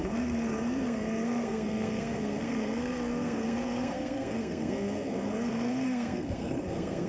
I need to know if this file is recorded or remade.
remade